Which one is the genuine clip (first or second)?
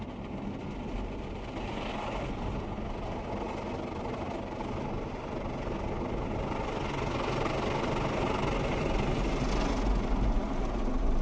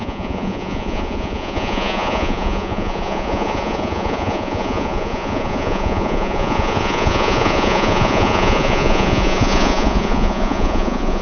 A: first